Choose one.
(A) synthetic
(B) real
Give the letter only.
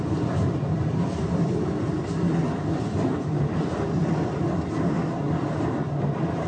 A